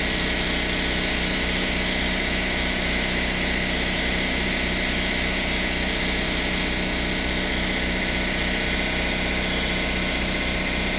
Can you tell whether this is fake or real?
real